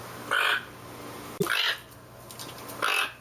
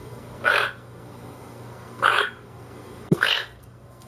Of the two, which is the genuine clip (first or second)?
first